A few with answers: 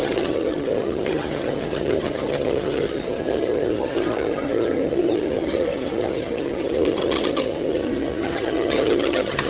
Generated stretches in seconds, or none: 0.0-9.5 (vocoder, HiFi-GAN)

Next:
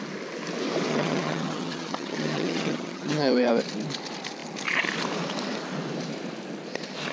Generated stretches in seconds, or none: 0.9-3.5 (vocoder, HiFi-GAN)

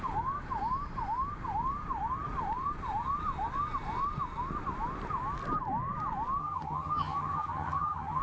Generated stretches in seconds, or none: 6.4-8.2 (vocoder, HiFi-GAN)

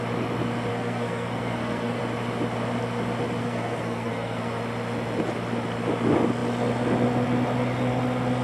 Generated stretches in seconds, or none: 0.7-2.0 (codec, SNAC); 3.4-4.6